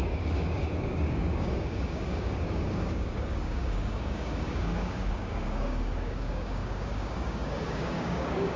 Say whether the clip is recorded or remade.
remade